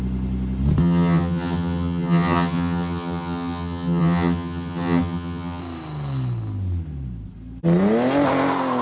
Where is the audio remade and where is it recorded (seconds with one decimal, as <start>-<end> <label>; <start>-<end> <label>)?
0.0-0.8 recorded; 0.8-5.6 remade; 5.6-8.8 recorded